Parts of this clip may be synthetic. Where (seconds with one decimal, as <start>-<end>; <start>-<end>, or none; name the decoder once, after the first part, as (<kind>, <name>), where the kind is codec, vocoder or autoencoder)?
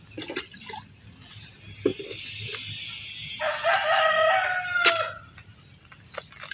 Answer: none